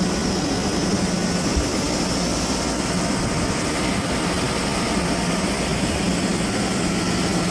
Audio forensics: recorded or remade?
recorded